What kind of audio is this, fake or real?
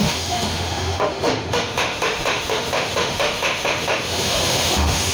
fake